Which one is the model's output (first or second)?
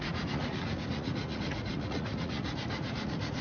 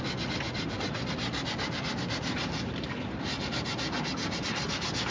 first